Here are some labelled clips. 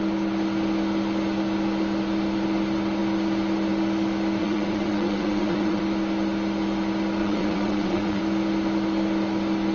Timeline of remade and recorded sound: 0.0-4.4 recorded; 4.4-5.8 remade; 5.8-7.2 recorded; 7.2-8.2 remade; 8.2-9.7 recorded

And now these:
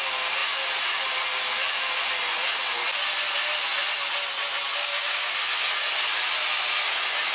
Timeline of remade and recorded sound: 0.0-4.8 recorded; 4.8-5.3 remade; 5.3-7.3 recorded

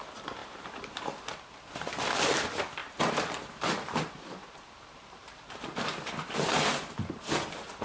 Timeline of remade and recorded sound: 0.0-0.4 recorded; 0.4-1.0 remade; 1.0-2.8 recorded; 2.8-7.8 remade

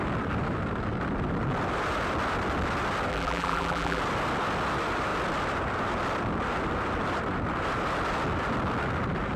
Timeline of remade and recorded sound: 0.0-3.1 recorded; 3.1-4.0 remade; 4.0-9.4 recorded

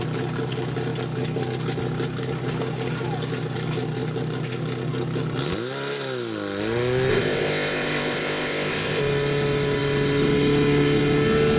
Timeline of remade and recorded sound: 0.0-7.1 recorded; 7.1-9.0 remade; 9.0-11.6 recorded

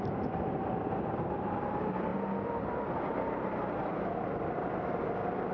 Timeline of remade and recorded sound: 0.0-5.5 recorded

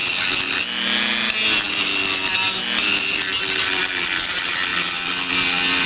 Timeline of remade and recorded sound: 0.0-4.7 recorded; 4.7-5.3 remade; 5.3-5.9 recorded

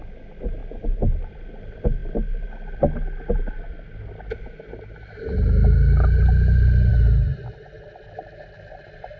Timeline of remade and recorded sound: 0.0-9.2 recorded